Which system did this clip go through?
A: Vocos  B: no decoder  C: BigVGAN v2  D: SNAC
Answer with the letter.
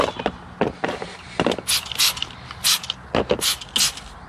B